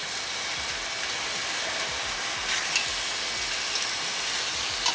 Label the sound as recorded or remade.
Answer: recorded